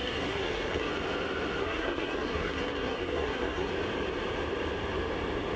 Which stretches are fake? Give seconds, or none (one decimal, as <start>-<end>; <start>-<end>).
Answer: 0.0-0.9; 1.6-3.7